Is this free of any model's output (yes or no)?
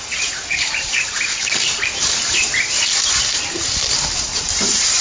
no